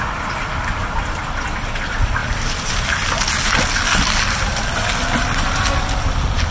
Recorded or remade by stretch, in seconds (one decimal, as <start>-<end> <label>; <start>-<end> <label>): 0.0-6.5 recorded